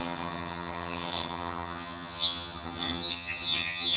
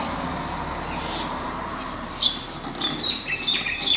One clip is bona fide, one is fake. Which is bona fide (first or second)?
second